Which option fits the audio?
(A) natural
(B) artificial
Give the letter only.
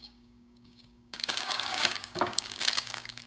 B